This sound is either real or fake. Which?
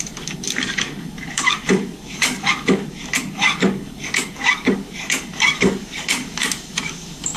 fake